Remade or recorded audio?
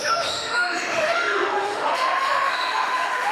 remade